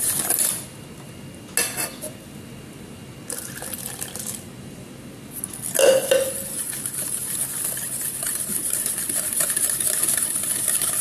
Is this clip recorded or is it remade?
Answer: recorded